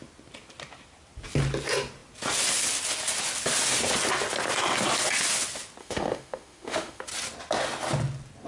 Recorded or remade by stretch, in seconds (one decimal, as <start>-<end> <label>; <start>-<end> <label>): 0.0-5.8 recorded; 5.8-7.1 remade; 7.1-8.5 recorded